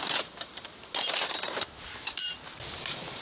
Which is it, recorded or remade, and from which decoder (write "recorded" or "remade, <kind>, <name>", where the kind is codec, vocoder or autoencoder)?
remade, vocoder, BigVGAN v2